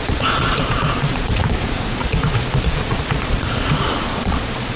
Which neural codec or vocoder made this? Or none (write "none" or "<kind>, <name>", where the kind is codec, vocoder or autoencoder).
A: vocoder, Vocos